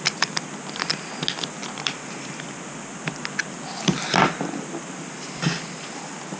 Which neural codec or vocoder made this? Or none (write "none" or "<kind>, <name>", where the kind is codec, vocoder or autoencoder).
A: none